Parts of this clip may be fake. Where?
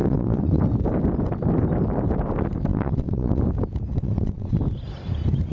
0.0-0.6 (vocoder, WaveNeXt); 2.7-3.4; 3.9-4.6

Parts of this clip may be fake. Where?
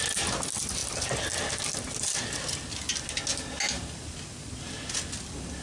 0.8-1.6 (vocoder, BigVGAN v2)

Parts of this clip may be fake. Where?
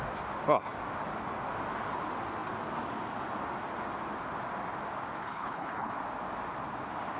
5.2-5.9 (codec, HILCodec)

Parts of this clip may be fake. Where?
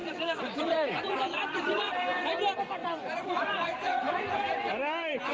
0.0-1.9 (vocoder, Vocos); 2.8-4.2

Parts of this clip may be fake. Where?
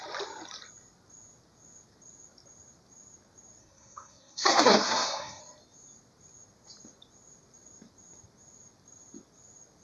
3.6-5.4 (codec, SNAC)